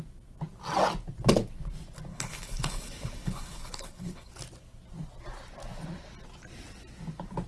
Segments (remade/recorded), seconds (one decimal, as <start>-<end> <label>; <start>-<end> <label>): 0.0-2.1 recorded; 2.1-4.3 remade; 4.3-7.5 recorded